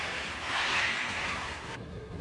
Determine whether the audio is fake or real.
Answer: fake